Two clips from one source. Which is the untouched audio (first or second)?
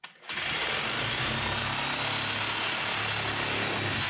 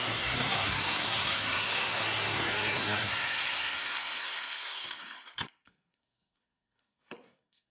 first